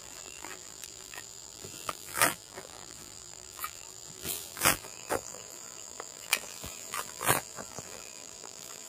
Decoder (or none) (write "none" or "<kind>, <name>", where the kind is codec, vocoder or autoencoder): vocoder, BigVGAN v2